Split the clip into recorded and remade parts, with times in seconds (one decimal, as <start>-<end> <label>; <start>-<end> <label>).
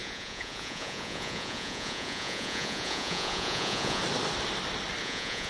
0.0-4.0 remade; 4.0-5.0 recorded; 5.0-5.5 remade